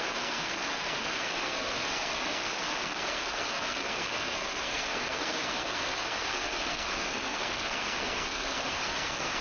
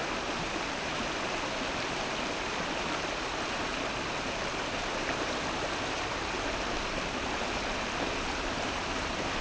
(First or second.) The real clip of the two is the second